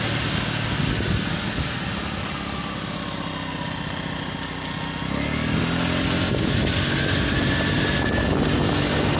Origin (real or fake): real